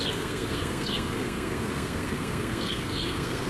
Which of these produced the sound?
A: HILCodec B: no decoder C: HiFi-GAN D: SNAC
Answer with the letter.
D